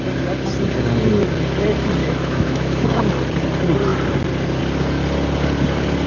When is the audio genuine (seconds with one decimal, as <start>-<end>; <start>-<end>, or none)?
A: 0.0-2.0; 3.1-6.1